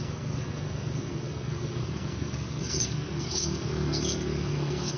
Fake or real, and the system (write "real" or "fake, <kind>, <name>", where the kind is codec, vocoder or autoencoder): fake, codec, SNAC